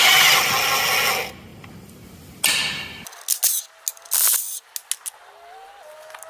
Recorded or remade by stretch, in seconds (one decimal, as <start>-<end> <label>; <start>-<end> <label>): 0.0-6.3 recorded